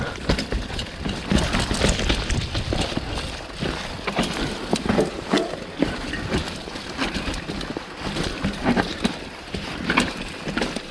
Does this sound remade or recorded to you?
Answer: recorded